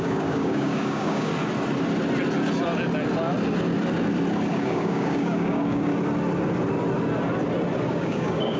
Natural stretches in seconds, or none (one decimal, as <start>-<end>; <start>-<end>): 1.3-4.5; 5.9-7.9